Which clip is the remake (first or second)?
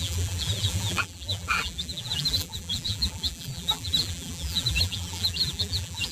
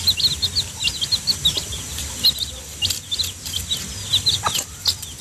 first